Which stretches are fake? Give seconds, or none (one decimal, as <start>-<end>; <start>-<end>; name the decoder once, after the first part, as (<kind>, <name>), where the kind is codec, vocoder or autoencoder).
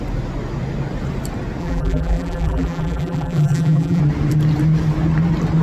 1.6-4.0 (vocoder, BigVGAN v2)